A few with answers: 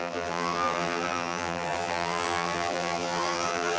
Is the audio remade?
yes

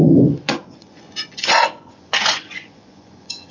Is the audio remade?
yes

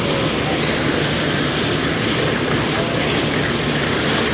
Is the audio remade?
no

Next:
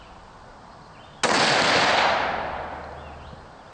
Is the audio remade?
no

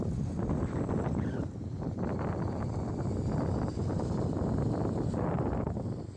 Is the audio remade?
no